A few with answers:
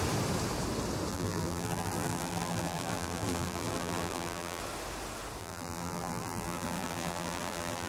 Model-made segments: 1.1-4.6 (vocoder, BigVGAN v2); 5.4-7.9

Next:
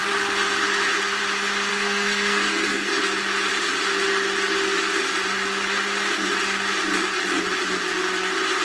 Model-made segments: 1.7-3.0 (codec, SNAC)

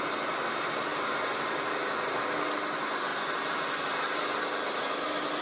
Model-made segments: none

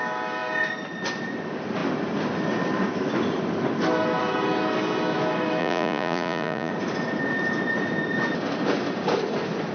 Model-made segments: 5.6-6.7 (vocoder, Vocos)

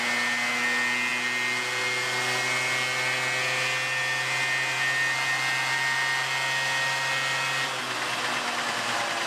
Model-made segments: none

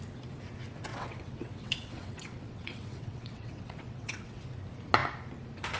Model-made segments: 0.9-4.4 (vocoder, WaveNeXt)

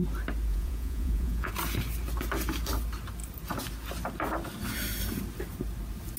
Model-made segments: 0.5-1.5 (vocoder, Vocos)